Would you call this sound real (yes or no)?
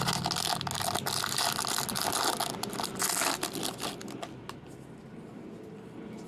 yes